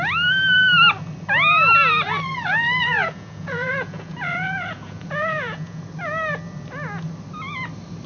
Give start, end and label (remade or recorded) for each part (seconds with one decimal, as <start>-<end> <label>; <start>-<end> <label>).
0.0-2.8 recorded; 2.8-5.8 remade; 5.8-8.1 recorded